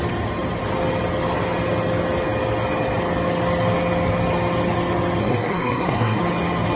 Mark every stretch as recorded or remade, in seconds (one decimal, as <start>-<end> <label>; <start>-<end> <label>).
0.0-5.2 recorded; 5.2-6.2 remade; 6.2-6.8 recorded